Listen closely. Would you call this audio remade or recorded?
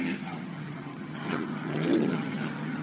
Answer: remade